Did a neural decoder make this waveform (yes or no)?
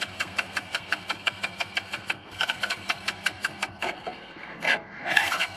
yes